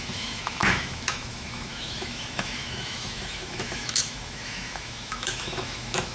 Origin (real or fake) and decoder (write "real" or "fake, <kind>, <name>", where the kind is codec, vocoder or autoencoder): fake, autoencoder, DAC-VAE